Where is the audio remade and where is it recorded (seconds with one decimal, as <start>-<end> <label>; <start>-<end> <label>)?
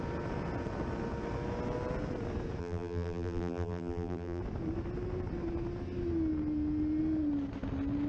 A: 0.0-2.6 recorded; 2.6-4.4 remade; 4.4-8.1 recorded